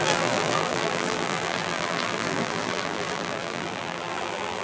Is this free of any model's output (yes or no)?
no